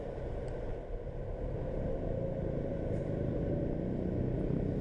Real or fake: real